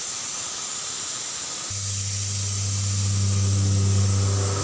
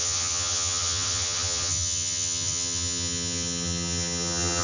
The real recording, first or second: first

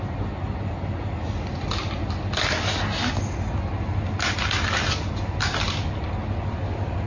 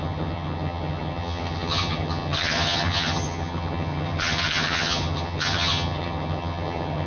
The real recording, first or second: first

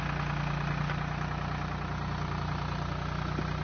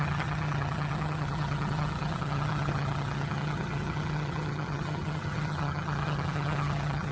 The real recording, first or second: first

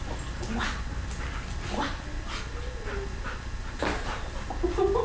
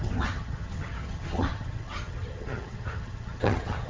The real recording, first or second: first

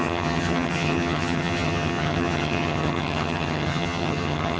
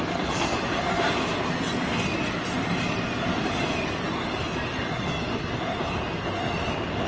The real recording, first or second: second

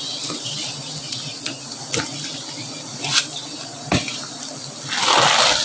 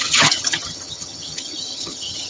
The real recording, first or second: first